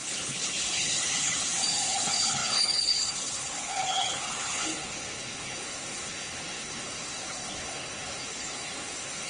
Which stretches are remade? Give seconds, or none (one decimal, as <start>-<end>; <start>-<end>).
0.0-9.3